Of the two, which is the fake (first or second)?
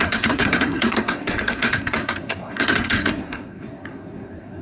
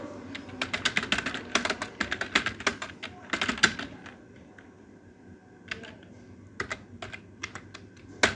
first